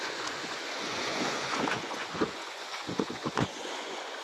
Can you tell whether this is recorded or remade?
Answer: remade